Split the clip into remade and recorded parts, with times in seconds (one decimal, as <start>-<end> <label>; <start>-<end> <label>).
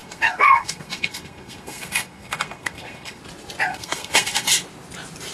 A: 0.0-3.2 remade; 3.2-3.7 recorded; 3.7-4.5 remade; 4.5-5.3 recorded